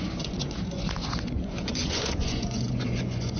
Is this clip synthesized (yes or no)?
yes